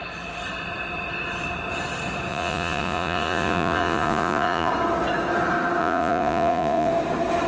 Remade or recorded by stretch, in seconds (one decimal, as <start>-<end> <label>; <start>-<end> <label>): 0.0-2.3 recorded; 2.3-4.7 remade; 4.7-5.8 recorded; 5.8-6.9 remade; 6.9-7.5 recorded